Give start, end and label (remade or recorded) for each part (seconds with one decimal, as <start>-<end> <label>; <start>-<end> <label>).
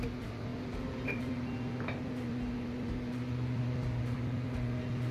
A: 0.0-5.1 recorded